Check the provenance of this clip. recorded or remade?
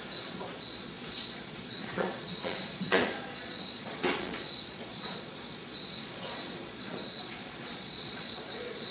remade